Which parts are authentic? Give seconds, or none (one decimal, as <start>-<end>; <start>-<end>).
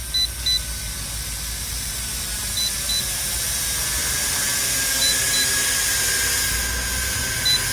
0.0-7.7